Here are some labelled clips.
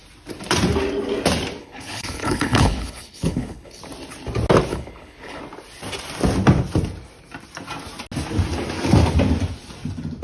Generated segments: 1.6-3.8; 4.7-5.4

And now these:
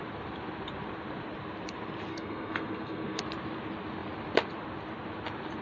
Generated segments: 2.1-3.2

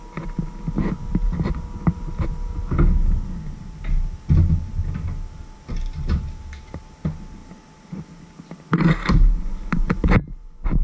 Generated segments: none

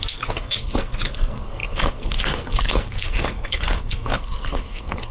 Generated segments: 0.0-5.1

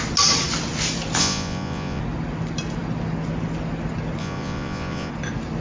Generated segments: 1.2-2.0; 4.2-5.1

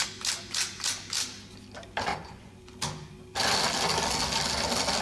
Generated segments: 2.1-2.7

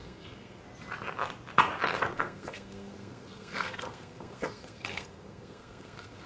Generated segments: 0.0-0.6; 2.1-6.3